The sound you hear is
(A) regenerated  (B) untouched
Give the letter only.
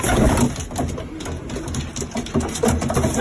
B